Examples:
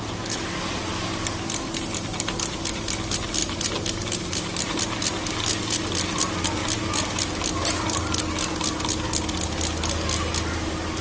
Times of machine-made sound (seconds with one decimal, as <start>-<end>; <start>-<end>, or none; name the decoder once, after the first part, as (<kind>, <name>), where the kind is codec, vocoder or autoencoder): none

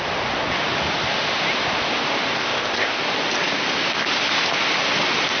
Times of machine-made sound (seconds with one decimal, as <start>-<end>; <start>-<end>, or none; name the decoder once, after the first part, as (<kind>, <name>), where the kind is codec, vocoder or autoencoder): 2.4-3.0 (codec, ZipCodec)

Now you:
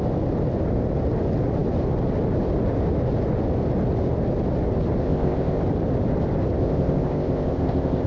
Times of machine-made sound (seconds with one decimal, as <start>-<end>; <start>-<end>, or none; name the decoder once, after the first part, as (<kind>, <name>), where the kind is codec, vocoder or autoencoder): 5.0-5.6 (codec, ZipCodec); 6.6-8.1

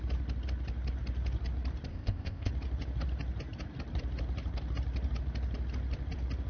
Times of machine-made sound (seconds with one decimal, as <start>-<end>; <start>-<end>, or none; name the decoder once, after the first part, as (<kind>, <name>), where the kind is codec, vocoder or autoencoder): 1.9-2.5 (codec, ZipCodec)

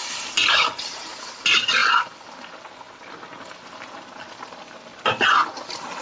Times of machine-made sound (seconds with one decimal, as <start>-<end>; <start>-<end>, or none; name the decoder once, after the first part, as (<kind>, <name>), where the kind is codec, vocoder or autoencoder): none

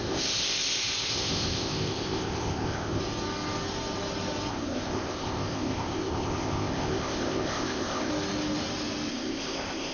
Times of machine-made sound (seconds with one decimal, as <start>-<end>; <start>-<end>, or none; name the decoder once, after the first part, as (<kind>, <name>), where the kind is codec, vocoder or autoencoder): 0.0-3.0 (codec, ZipCodec); 4.5-8.1; 9.1-9.9

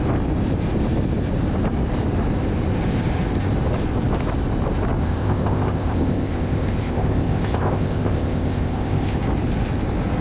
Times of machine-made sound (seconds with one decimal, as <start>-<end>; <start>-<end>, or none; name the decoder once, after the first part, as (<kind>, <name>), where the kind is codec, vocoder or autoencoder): 5.0-9.2 (codec, ZipCodec)

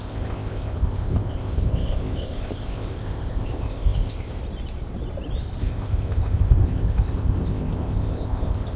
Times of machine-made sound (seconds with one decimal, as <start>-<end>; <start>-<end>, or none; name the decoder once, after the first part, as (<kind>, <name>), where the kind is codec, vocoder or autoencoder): 0.0-4.4 (codec, ZipCodec); 5.6-8.8